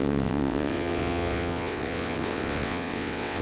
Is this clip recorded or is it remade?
remade